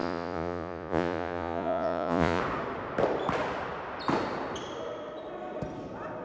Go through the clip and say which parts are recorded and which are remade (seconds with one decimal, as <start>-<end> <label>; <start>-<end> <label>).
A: 0.0-2.4 remade; 2.4-6.2 recorded